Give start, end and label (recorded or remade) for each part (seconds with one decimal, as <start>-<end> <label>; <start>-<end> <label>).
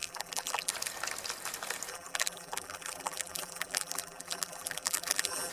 0.0-0.7 remade; 0.7-1.9 recorded; 1.9-5.5 remade